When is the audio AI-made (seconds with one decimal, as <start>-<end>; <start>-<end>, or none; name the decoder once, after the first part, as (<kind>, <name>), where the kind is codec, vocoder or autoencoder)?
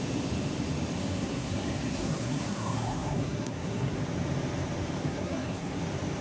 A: 1.0-4.0 (codec, SNAC); 5.0-5.8